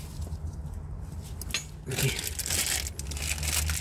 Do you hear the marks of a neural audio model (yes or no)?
no